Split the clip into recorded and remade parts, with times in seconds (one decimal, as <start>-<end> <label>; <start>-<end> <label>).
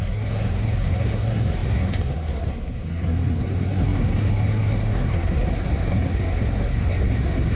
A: 0.0-7.6 remade